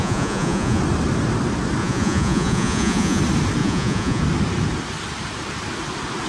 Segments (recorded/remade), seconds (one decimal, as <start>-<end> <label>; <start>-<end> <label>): 0.0-0.8 remade; 0.8-1.8 recorded; 1.8-3.2 remade; 3.2-3.6 recorded; 3.6-4.2 remade; 4.2-6.3 recorded